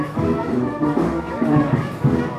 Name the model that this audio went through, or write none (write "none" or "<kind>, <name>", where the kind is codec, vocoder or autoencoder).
codec, DAC